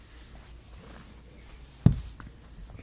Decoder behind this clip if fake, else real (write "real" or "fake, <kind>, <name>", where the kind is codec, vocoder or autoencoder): real